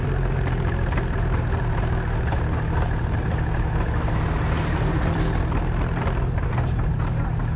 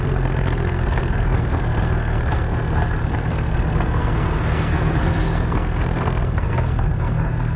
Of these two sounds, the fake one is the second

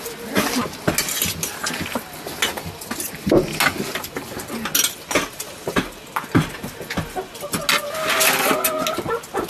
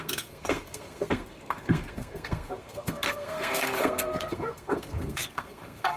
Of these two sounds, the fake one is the second